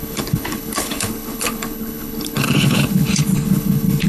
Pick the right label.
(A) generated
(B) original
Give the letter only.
A